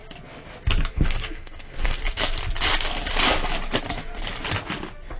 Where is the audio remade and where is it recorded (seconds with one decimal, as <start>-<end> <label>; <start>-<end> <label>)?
0.0-0.9 recorded; 0.9-2.0 remade; 2.0-5.2 recorded